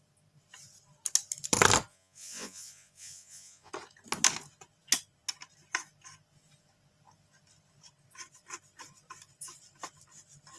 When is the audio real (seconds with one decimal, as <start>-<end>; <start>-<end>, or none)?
0.0-1.9; 3.7-10.6